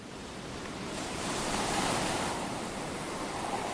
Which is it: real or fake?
fake